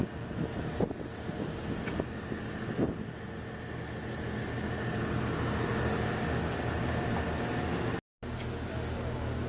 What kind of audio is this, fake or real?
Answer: real